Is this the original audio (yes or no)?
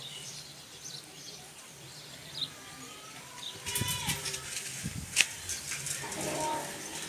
yes